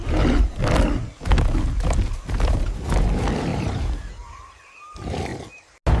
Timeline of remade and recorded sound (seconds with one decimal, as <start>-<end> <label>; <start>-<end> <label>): 0.0-3.5 recorded; 3.5-4.1 remade; 4.1-6.0 recorded